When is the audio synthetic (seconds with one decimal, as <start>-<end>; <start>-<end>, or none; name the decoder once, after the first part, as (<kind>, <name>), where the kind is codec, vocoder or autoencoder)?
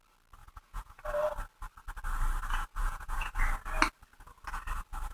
0.4-1.0 (vocoder, Vocos); 2.8-3.4